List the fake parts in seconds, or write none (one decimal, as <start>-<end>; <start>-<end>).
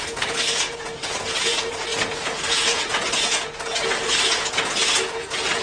0.0-5.6